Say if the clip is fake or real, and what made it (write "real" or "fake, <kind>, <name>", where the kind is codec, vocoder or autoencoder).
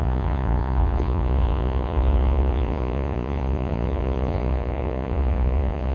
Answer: fake, vocoder, Vocos